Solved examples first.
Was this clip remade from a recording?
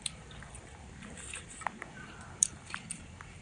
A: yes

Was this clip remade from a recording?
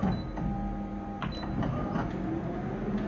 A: no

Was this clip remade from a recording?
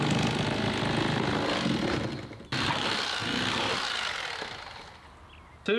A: no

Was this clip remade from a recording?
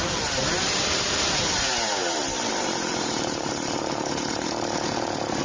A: yes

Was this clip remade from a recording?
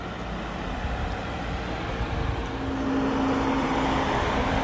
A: no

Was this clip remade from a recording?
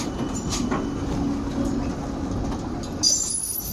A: no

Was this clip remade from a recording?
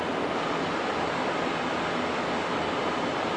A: no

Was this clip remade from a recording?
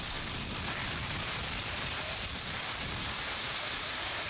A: yes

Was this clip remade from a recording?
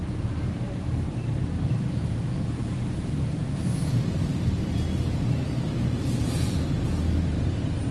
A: yes